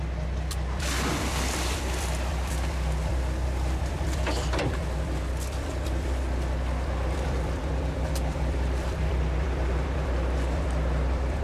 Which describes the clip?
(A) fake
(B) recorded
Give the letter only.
A